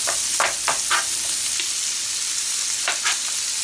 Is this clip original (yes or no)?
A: yes